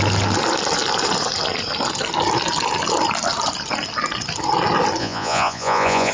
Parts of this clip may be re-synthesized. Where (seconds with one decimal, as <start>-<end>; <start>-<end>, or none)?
5.0-6.1